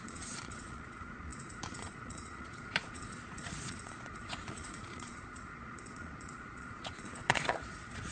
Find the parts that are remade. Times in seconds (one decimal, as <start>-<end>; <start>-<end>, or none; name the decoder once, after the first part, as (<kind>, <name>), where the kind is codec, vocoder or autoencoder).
0.0-8.1 (vocoder, Vocos)